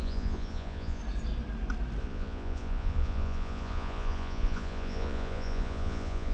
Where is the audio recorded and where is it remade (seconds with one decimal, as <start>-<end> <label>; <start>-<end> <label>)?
0.0-1.0 remade; 1.0-2.0 recorded; 2.0-6.3 remade